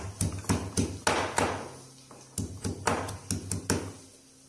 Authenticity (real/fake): real